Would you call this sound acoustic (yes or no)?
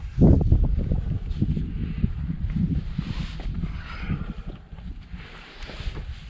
yes